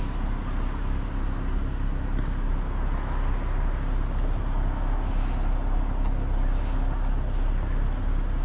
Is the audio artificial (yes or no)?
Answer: no